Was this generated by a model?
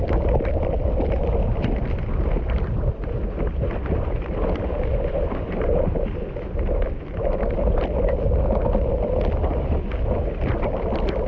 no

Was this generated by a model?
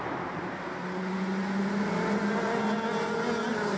no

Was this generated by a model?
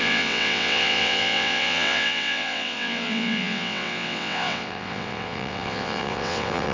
yes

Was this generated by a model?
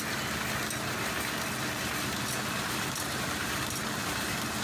no